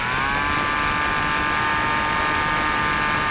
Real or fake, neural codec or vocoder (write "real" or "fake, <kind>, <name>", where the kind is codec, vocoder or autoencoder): real